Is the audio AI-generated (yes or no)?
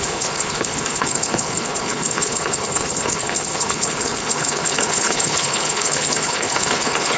yes